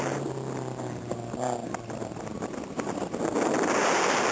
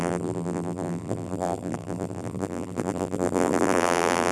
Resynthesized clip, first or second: second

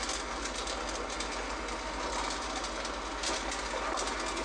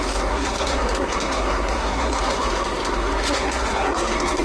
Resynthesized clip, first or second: second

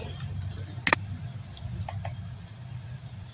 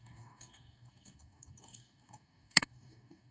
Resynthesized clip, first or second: second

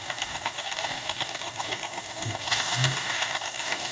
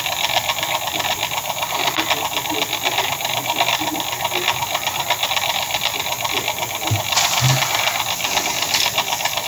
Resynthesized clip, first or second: first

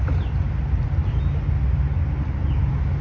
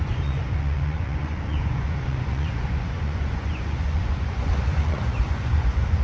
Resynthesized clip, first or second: second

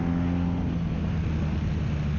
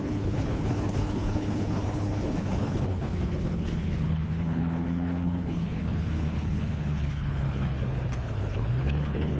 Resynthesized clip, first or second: second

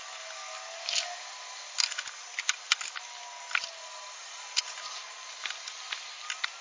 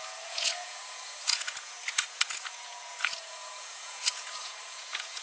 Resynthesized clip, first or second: second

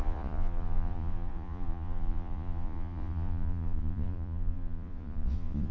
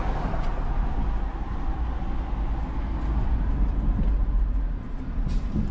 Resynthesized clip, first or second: first